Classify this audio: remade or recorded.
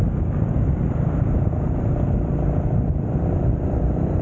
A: remade